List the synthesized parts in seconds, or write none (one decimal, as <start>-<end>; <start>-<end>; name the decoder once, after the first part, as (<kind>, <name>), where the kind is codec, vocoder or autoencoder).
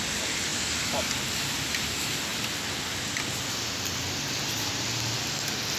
none